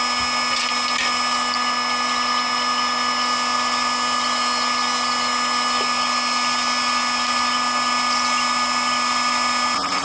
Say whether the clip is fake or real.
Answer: real